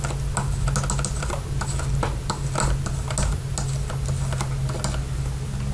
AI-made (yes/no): no